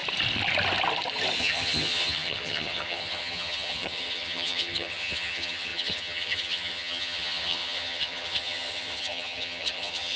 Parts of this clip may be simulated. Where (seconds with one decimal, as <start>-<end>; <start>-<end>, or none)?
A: 1.4-10.2